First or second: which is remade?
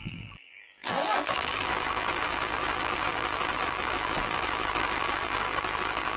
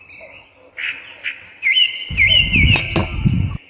first